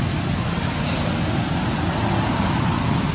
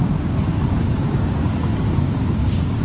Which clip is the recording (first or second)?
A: first